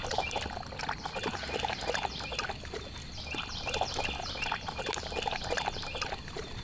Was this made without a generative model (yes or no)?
yes